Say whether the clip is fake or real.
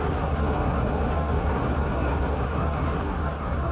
fake